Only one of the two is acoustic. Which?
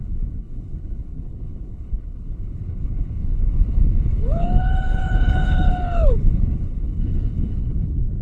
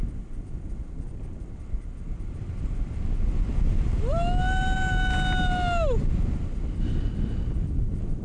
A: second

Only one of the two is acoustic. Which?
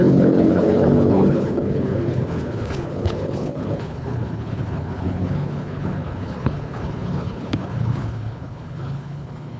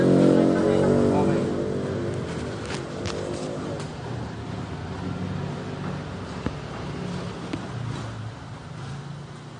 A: second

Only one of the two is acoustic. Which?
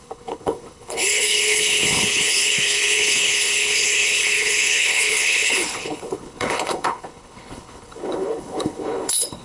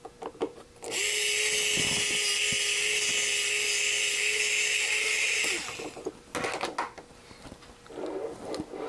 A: second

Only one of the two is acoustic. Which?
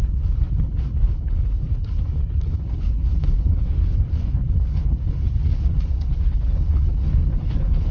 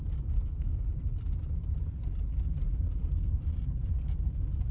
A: second